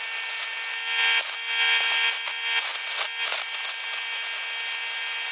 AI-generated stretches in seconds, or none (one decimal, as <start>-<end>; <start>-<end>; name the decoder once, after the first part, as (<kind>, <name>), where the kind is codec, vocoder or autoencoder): none